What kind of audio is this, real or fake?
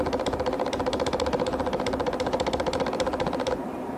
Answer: real